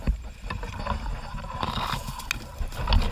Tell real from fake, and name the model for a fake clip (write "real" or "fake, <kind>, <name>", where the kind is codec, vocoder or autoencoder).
real